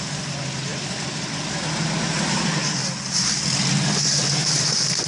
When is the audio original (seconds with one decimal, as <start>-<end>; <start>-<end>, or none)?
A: 0.0-5.1